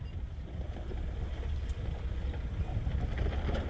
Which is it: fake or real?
real